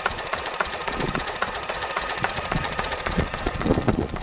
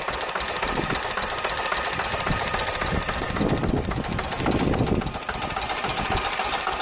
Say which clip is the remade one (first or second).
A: first